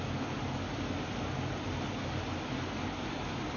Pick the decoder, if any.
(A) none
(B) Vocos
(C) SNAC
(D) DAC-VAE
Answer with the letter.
A